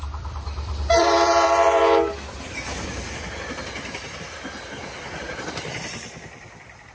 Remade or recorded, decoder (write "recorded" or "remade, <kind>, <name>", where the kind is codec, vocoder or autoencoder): remade, vocoder, BigVGAN v2